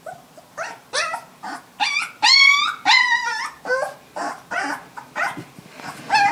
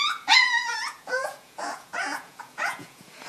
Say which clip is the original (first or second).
first